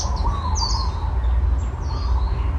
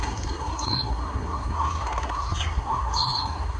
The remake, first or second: second